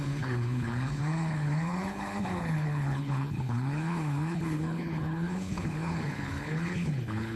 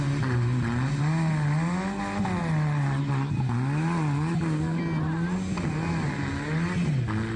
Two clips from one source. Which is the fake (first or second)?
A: first